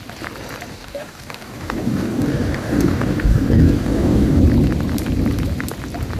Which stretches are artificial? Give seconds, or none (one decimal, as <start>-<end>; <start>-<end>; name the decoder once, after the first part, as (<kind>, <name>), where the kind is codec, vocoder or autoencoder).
0.7-4.4 (codec, DAC)